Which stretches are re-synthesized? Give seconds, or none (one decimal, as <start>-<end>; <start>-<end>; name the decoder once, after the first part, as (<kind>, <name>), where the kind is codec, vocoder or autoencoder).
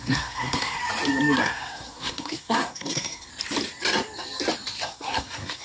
0.0-0.8 (codec, SNAC); 1.4-3.3; 4.8-5.6